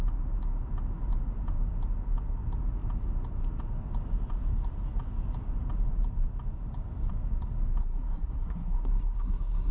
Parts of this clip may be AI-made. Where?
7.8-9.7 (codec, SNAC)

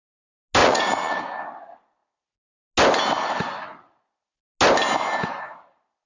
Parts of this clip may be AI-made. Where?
0.6-1.2 (vocoder, Vocos)

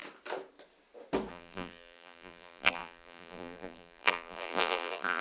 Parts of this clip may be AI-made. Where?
1.3-5.2 (vocoder, BigVGAN v2)

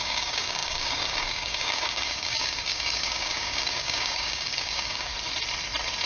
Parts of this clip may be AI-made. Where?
0.0-5.1 (codec, DAC)

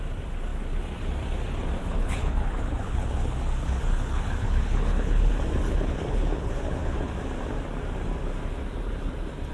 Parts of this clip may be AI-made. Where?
1.8-5.3 (codec, HILCodec); 5.7-7.1

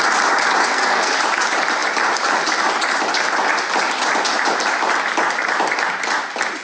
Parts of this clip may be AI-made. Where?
0.6-1.2 (codec, SNAC)

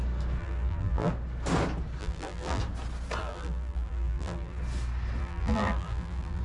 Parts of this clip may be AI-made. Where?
0.4-1.1 (vocoder, BigVGAN v2); 2.0-2.6; 3.2-4.6; 5.2-6.4

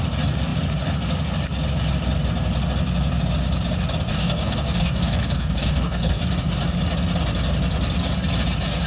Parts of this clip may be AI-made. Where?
4.1-6.2 (codec, DAC)